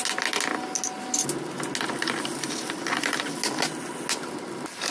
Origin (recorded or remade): recorded